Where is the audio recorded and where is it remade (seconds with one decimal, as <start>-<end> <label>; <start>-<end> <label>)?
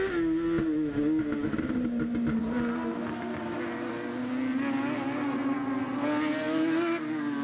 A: 0.0-7.4 recorded